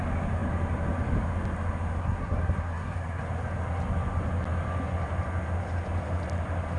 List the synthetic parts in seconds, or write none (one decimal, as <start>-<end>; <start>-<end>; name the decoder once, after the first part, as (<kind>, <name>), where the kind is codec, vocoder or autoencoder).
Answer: 2.0-3.2 (codec, SNAC)